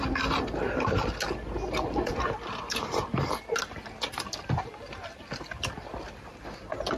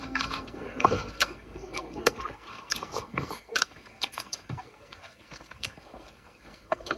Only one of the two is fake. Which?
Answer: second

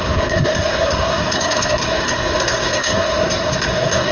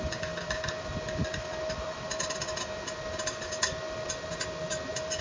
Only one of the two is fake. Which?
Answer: first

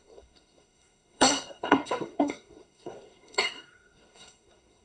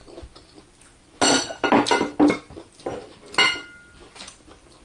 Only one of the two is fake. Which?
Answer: first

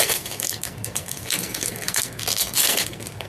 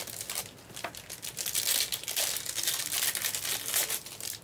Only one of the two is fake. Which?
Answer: first